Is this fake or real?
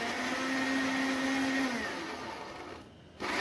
real